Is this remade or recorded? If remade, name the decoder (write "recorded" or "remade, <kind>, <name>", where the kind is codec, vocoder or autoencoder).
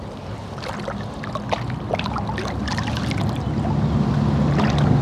recorded